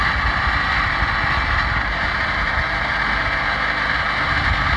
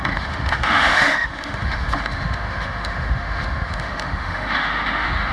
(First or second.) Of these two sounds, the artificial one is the second